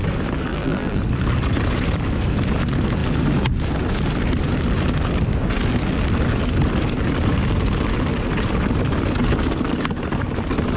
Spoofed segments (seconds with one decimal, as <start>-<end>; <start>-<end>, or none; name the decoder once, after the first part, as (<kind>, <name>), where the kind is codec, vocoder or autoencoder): 0.5-1.0 (vocoder, BigVGAN v2)